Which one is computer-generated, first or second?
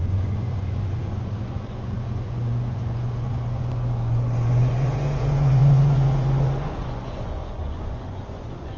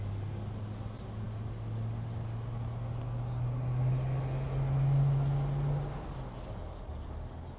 first